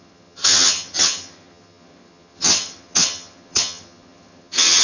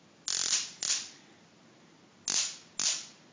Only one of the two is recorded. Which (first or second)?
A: second